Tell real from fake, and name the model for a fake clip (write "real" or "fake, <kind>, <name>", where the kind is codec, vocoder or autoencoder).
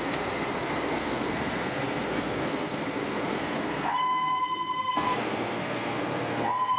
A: fake, codec, SNAC